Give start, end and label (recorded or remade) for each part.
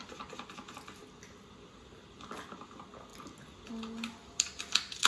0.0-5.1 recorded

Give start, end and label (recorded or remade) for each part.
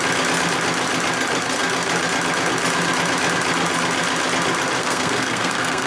0.0-4.8 recorded; 4.8-5.9 remade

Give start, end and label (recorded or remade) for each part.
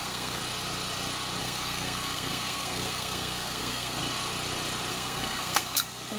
0.0-0.4 remade; 0.4-1.4 recorded; 1.4-4.0 remade; 4.0-4.9 recorded; 4.9-6.2 remade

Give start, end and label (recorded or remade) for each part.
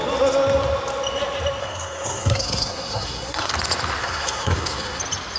0.0-1.6 recorded; 1.6-3.5 remade; 3.5-4.0 recorded; 4.0-5.0 remade; 5.0-5.4 recorded